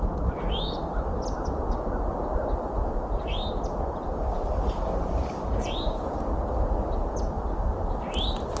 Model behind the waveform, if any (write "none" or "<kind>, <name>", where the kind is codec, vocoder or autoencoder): none